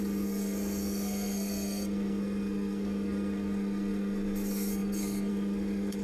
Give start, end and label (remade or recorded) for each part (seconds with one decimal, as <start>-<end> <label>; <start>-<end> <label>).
0.0-6.0 remade